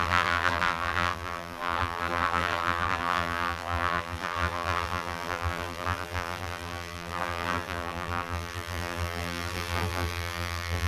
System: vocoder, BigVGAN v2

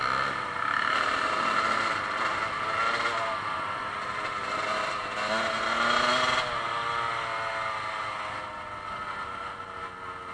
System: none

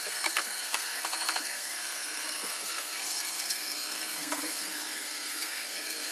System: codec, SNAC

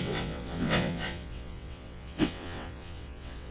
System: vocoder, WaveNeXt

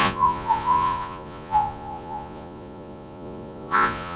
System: vocoder, Vocos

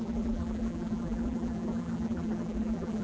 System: vocoder, BigVGAN v2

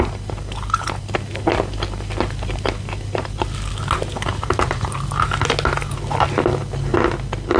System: none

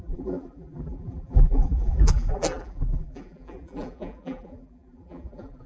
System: vocoder, BigVGAN v2